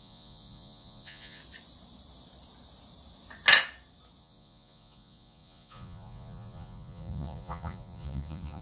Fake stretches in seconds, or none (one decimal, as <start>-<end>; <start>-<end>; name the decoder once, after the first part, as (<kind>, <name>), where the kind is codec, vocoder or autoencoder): 0.0-1.4 (vocoder, Vocos); 4.2-8.6